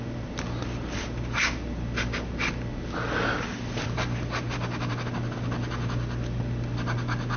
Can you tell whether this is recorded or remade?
recorded